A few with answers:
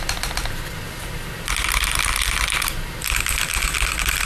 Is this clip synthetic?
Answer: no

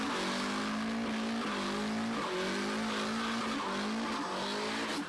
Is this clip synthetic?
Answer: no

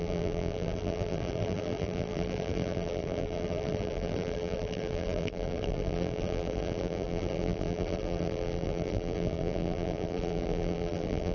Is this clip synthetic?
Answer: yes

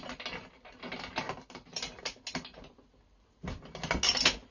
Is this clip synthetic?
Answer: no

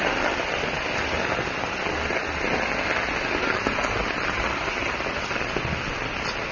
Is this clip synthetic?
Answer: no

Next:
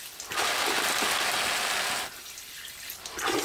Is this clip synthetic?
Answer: no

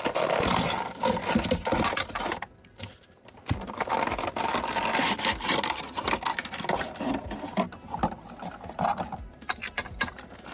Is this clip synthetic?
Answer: no